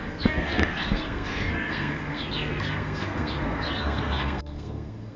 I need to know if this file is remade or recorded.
remade